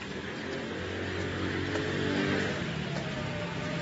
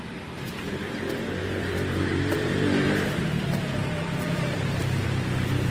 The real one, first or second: first